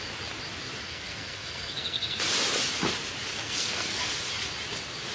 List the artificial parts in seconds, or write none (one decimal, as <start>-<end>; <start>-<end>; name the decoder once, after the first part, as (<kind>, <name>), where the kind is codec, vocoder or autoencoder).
0.8-2.2 (codec, SNAC); 3.3-4.1